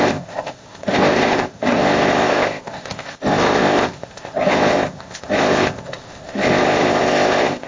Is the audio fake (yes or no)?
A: yes